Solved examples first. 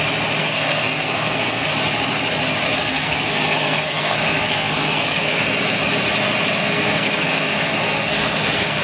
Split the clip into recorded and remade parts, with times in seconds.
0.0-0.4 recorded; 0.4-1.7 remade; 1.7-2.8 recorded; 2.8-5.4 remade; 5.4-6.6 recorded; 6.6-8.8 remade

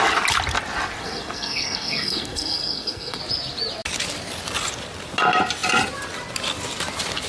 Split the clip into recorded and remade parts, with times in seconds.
0.0-1.0 recorded; 1.0-3.2 remade; 3.2-7.3 recorded